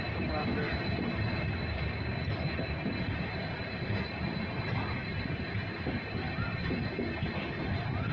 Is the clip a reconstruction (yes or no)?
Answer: no